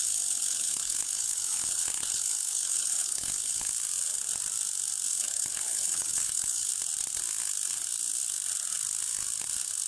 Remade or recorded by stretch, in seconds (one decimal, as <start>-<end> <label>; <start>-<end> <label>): 0.0-3.7 remade; 3.7-5.1 recorded; 5.1-6.7 remade; 6.7-9.9 recorded